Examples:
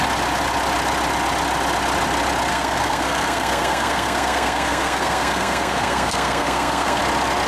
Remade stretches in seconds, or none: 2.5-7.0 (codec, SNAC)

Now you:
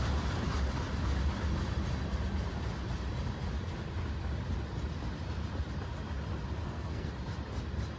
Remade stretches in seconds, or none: 6.6-7.1 (codec, SNAC)

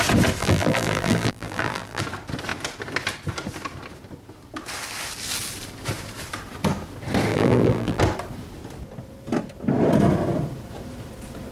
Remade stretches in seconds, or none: 0.4-2.0 (vocoder, BigVGAN v2); 7.3-8.0

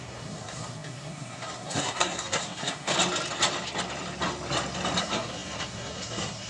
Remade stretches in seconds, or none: 0.0-2.9 (codec, SNAC); 5.0-6.5

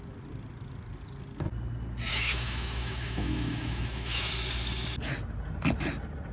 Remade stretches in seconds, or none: 2.1-4.3 (autoencoder, DAC-VAE)

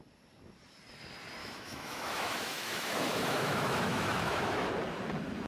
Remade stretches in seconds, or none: 1.4-4.7 (autoencoder, DAC-VAE)

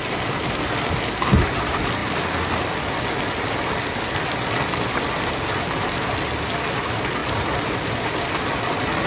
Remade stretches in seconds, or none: none

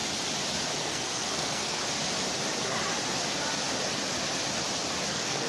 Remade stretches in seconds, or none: 0.8-1.8 (codec, SNAC); 5.1-5.5